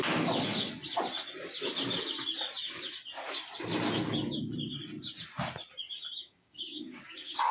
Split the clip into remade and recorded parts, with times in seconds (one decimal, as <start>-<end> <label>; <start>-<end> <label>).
0.0-6.2 recorded; 6.2-7.5 remade

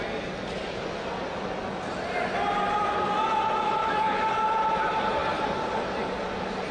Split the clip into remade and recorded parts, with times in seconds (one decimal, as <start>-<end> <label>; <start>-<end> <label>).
0.0-3.8 recorded; 3.8-4.3 remade; 4.3-6.7 recorded